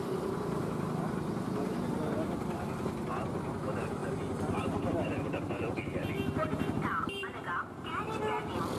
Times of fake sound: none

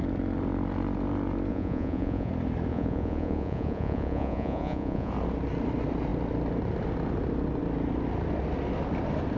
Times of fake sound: 1.5-2.3 (vocoder, Vocos); 2.7-5.1